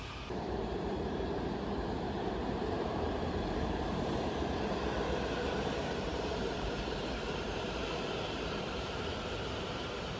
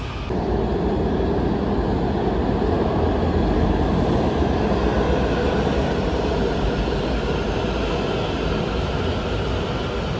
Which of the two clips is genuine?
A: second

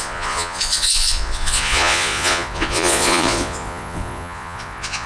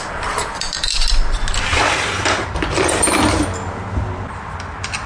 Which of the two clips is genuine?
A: second